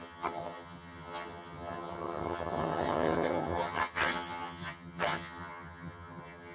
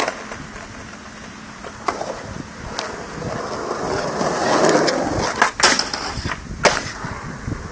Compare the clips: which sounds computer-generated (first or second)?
first